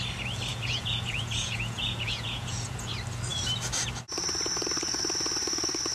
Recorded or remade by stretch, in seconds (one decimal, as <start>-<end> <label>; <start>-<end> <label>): 0.0-0.5 recorded; 0.5-2.9 remade; 2.9-5.9 recorded